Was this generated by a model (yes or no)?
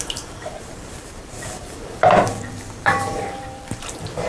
yes